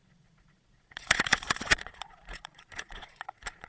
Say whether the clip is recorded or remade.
remade